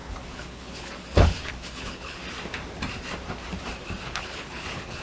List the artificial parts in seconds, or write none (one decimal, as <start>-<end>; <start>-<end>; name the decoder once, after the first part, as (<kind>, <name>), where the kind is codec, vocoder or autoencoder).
0.0-2.2 (codec, HILCodec); 4.0-5.0